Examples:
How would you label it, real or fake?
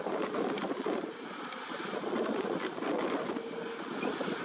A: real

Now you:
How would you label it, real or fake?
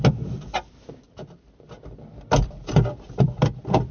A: real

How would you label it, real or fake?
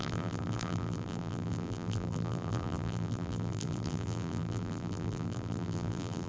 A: fake